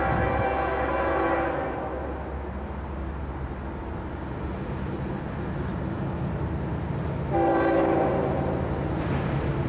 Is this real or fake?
real